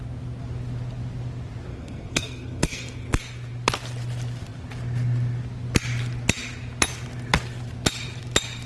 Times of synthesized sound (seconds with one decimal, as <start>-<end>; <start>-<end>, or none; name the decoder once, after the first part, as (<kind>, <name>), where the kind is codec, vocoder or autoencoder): 1.7-3.2 (codec, SNAC)